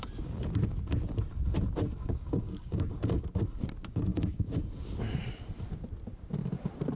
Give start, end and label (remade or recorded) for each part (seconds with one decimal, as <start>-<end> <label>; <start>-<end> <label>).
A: 0.0-2.0 recorded; 2.0-3.2 remade; 3.2-4.1 recorded; 4.1-4.6 remade; 4.6-7.0 recorded